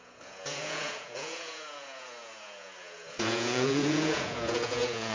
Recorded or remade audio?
remade